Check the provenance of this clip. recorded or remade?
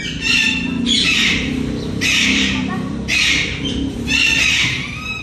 remade